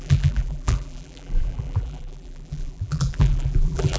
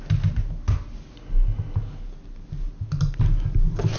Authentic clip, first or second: second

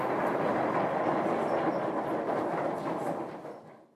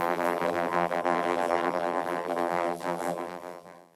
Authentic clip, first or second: first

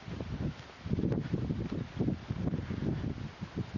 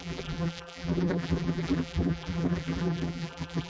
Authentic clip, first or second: first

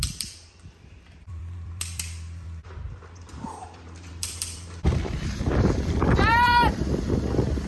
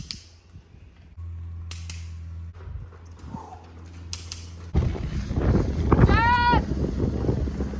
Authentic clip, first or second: second